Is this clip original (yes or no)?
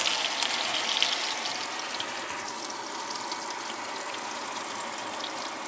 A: yes